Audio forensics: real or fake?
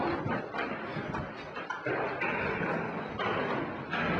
real